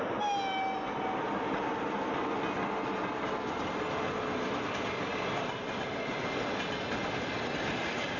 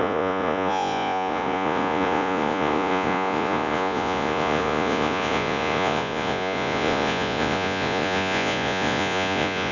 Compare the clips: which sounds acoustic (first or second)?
first